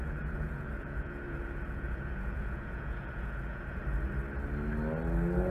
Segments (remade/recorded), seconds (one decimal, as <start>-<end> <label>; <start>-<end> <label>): 0.0-3.8 remade; 3.8-5.5 recorded